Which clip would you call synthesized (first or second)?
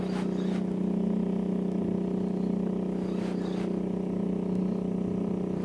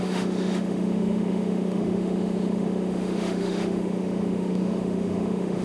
second